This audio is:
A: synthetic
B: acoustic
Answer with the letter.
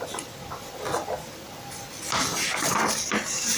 B